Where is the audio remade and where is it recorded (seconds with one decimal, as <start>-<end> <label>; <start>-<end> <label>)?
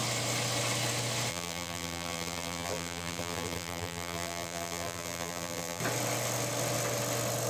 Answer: 0.0-1.3 recorded; 1.3-5.8 remade; 5.8-7.5 recorded